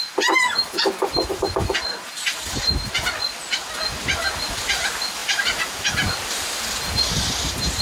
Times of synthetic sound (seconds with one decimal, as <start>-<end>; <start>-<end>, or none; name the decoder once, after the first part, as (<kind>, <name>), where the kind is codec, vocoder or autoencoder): none